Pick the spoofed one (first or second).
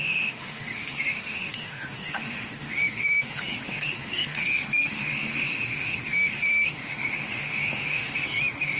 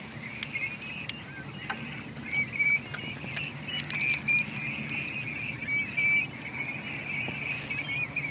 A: first